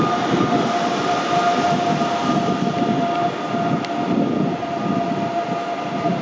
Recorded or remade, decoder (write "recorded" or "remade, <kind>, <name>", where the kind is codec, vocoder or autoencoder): recorded